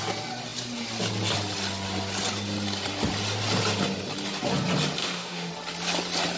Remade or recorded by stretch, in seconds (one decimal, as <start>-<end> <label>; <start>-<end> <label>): 0.0-5.0 recorded; 5.0-5.5 remade; 5.5-6.4 recorded